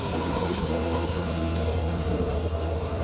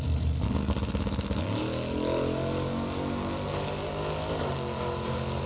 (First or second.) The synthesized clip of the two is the first